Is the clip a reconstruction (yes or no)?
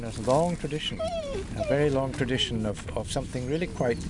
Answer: no